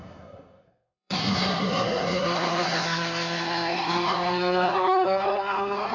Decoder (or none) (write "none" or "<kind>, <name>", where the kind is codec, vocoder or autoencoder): codec, SNAC